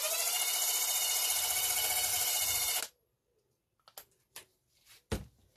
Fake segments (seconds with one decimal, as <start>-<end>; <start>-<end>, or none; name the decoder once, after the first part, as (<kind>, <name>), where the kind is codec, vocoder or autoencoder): 2.1-2.8 (vocoder, BigVGAN v2)